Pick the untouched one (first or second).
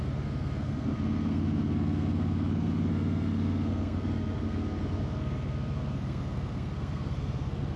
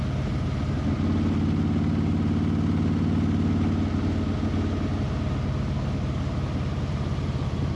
second